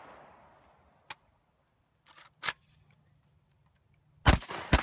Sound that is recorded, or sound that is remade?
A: recorded